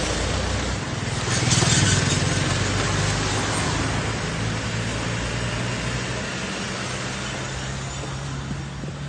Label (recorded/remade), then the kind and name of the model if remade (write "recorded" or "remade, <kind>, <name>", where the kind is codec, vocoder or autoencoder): recorded